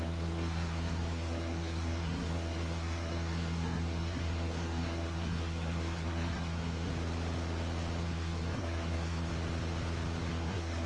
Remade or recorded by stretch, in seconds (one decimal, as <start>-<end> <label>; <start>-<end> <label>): 0.0-6.9 remade; 6.9-8.0 recorded; 8.0-9.3 remade; 9.3-10.3 recorded; 10.3-10.9 remade